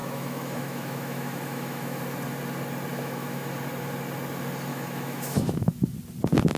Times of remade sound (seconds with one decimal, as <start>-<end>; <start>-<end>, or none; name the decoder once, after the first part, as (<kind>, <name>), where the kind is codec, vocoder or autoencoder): 0.0-2.0 (autoencoder, DAC-VAE); 2.9-3.5; 4.7-5.9